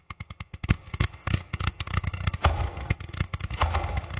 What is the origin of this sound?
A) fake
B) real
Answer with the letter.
A